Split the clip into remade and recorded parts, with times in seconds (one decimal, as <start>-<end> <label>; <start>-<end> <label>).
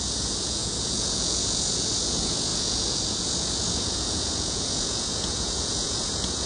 0.0-6.5 remade